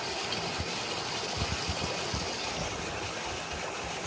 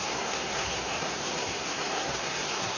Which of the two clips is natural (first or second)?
first